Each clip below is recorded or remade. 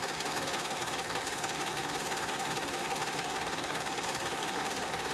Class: remade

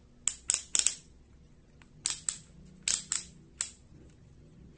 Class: recorded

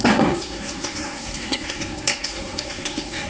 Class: remade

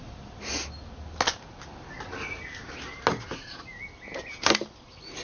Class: recorded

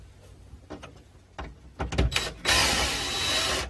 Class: recorded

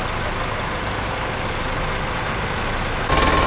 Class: recorded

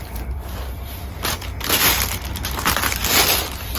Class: recorded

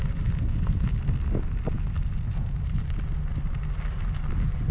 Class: recorded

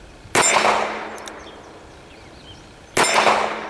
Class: recorded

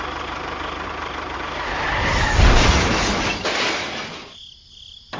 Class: recorded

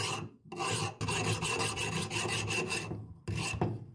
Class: recorded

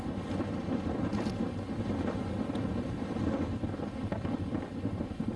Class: recorded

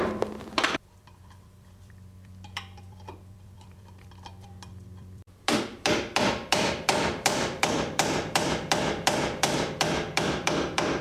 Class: remade